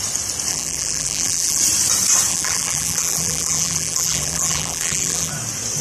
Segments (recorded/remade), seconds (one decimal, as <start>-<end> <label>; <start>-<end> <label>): 0.0-0.5 recorded; 0.5-1.6 remade; 1.6-2.3 recorded; 2.3-5.3 remade; 5.3-5.8 recorded